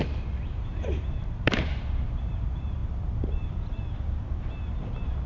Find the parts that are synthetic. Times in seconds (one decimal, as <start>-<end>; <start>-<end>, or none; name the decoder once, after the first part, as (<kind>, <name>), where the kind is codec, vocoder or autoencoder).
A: 0.0-2.8 (vocoder, BigVGAN v2)